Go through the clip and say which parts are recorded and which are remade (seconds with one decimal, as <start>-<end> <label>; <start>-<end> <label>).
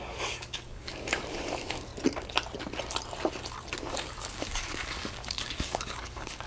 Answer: 0.0-1.9 remade; 1.9-3.9 recorded; 3.9-6.5 remade